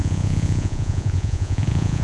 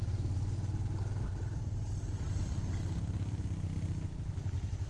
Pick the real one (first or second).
second